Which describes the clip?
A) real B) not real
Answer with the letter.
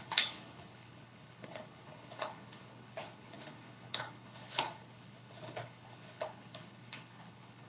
B